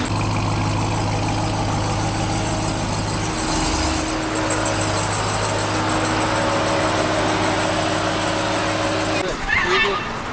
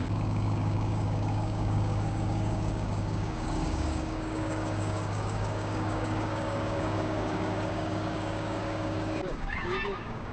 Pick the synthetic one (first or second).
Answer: second